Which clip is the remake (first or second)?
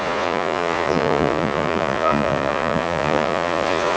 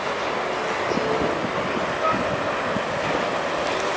first